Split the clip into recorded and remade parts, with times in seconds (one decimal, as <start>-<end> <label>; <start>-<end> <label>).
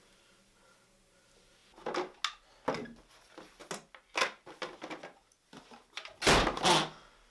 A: 0.0-7.3 recorded